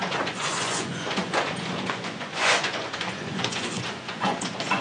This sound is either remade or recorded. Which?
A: remade